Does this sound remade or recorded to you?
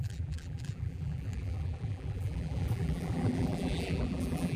remade